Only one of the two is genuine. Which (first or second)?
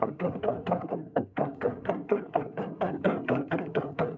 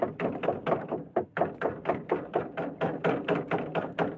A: second